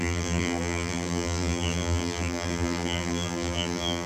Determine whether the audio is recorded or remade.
remade